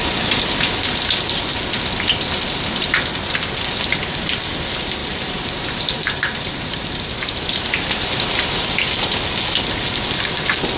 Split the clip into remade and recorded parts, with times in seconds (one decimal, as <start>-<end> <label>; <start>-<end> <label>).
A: 0.0-5.0 recorded; 5.0-8.2 remade; 8.2-10.8 recorded